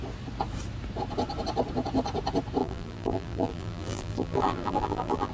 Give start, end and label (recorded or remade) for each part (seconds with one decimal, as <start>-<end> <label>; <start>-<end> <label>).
0.0-2.6 recorded; 2.6-5.3 remade